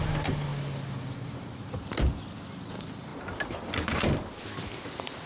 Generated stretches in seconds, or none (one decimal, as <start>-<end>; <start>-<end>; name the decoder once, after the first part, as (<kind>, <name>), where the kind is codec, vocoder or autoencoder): none